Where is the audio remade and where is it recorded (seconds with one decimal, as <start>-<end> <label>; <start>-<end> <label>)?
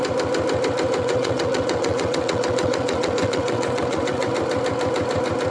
0.0-1.0 recorded; 1.0-4.3 remade; 4.3-5.5 recorded